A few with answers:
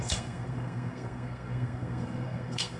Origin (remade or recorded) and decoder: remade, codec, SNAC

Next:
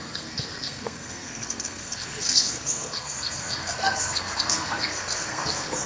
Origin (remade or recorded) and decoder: remade, codec, SNAC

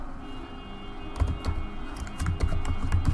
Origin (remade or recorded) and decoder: recorded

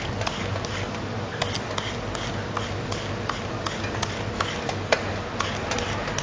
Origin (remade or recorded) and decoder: recorded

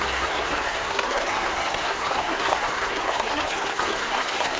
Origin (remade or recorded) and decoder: remade, codec, SNAC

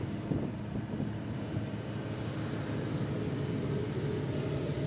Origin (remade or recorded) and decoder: recorded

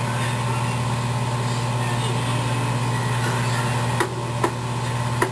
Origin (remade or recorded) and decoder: recorded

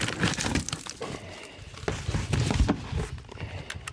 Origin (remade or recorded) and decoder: recorded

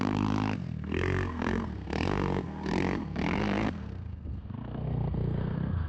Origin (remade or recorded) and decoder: remade, codec, SNAC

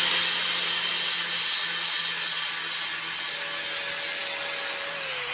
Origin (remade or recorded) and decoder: recorded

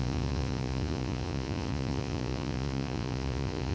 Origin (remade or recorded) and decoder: remade, vocoder, Vocos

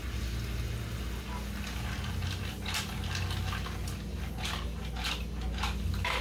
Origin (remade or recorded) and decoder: recorded